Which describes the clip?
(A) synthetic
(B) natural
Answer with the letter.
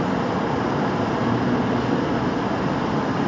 B